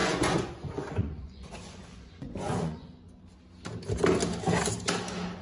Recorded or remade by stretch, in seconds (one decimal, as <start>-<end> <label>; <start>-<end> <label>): 0.0-3.2 remade; 3.2-5.4 recorded